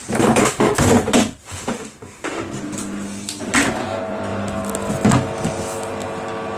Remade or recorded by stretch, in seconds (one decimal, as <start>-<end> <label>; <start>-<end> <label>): 0.0-0.4 recorded; 0.4-0.9 remade; 0.9-1.4 recorded; 1.4-2.6 remade; 2.6-6.6 recorded